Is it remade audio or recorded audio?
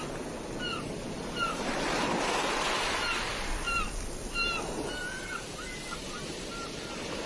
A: recorded